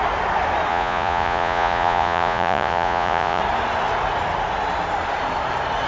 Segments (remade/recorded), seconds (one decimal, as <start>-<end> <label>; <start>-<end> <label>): 0.0-0.7 recorded; 0.7-3.4 remade; 3.4-5.9 recorded